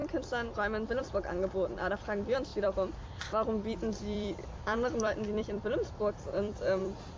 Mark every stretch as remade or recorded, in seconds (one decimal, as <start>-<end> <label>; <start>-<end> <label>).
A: 0.0-1.0 recorded; 1.0-7.2 remade